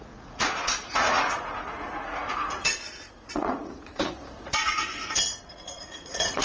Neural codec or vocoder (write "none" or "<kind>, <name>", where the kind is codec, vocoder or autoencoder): vocoder, Vocos